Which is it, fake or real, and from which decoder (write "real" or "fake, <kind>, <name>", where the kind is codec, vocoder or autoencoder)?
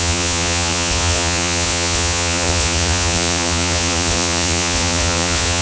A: fake, vocoder, Vocos